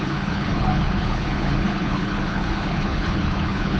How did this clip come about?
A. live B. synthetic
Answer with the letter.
B